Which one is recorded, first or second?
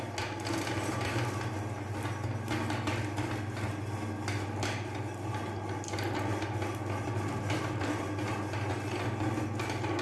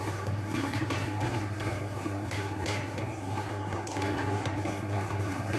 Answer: first